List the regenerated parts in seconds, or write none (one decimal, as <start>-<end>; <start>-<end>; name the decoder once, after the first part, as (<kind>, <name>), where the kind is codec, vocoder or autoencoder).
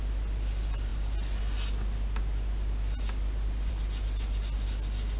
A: none